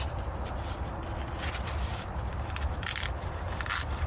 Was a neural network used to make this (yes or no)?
yes